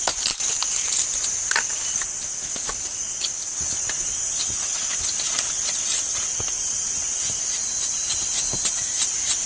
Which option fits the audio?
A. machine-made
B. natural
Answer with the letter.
B